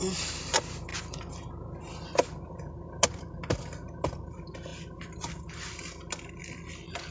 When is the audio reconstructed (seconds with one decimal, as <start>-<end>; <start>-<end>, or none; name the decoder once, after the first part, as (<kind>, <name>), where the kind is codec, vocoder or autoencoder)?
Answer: none

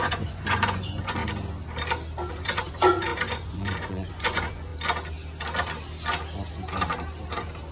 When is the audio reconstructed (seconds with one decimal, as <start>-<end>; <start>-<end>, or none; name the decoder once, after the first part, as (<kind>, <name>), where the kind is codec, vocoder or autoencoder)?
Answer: 0.0-1.2 (vocoder, Vocos); 2.3-4.7

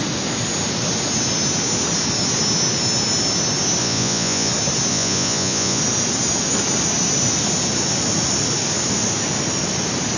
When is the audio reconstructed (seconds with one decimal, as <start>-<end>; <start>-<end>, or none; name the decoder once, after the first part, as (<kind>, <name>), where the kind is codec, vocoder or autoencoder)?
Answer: 3.8-4.5 (vocoder, Vocos); 4.9-5.8

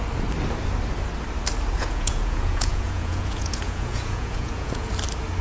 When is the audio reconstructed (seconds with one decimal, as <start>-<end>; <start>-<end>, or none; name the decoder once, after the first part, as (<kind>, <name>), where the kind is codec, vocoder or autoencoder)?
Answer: 1.7-4.9 (vocoder, Vocos)

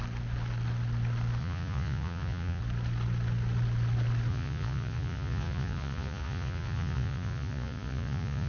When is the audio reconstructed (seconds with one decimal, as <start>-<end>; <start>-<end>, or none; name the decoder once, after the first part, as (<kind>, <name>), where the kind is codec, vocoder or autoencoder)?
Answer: 1.4-2.6 (vocoder, Vocos); 4.3-8.5

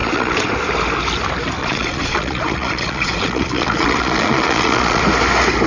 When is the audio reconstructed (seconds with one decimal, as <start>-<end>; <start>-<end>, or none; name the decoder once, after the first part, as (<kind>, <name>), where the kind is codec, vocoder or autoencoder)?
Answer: 0.0-0.5 (vocoder, Vocos); 1.6-5.0